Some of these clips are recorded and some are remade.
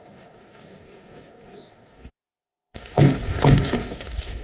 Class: remade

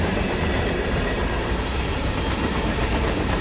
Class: remade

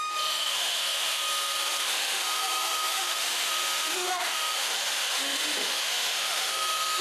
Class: remade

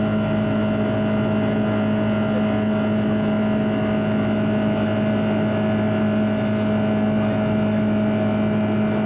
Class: recorded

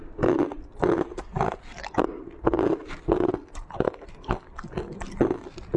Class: recorded